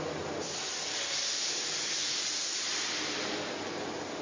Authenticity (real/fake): real